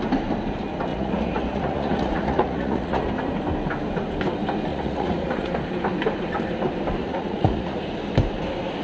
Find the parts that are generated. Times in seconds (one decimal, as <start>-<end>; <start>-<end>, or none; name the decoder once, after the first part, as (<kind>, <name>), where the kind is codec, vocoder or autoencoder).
0.9-3.1 (vocoder, Vocos); 4.7-5.5; 7.0-7.8